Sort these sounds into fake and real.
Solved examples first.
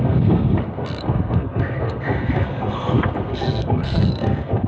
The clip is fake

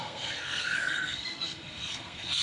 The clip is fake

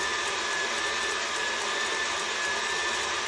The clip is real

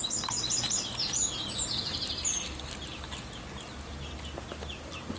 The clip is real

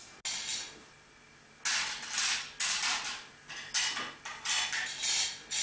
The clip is real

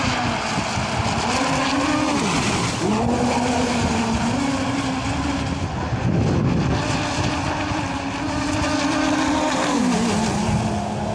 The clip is real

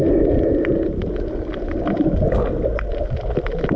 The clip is real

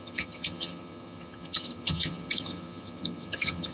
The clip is fake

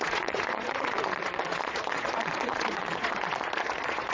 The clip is fake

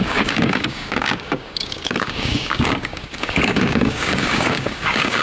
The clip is fake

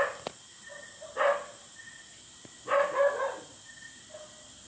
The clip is real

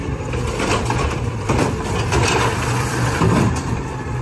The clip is fake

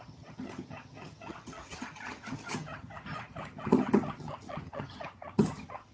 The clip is fake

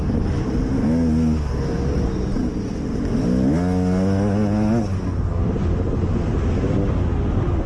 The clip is real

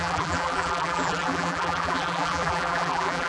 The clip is fake